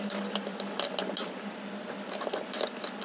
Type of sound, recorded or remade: recorded